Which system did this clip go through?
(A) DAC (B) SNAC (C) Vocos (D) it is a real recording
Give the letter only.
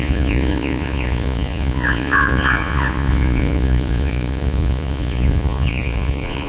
C